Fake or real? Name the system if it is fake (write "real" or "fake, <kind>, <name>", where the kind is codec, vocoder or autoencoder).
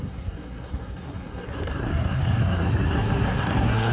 fake, codec, SNAC